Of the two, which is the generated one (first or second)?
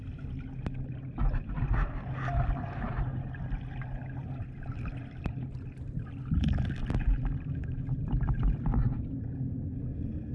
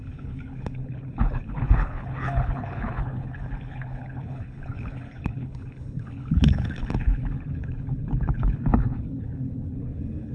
second